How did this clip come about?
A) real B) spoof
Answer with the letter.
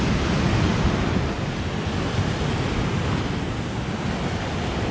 A